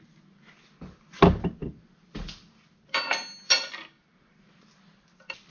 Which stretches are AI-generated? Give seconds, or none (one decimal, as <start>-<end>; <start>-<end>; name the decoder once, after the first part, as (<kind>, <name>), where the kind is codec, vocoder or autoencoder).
none